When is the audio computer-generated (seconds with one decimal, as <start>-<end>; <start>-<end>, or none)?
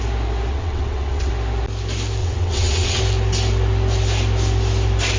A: 0.5-1.3; 2.2-3.0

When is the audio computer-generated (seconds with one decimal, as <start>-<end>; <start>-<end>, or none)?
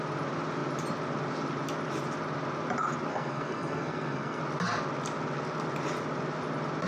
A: 3.1-4.4